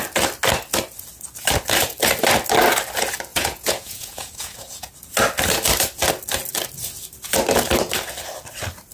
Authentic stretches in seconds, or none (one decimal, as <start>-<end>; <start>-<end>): 0.0-3.3; 4.9-8.9

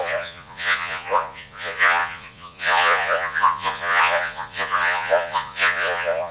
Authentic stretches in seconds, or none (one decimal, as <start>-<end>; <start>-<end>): none

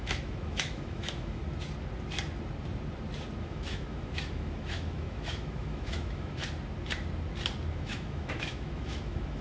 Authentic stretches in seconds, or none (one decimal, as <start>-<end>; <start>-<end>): 1.4-3.4; 6.4-7.7

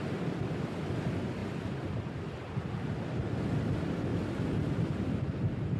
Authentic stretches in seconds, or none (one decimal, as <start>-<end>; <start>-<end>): 0.0-5.8